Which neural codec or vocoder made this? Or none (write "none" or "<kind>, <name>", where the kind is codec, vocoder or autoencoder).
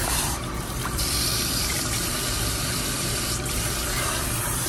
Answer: vocoder, BigVGAN v2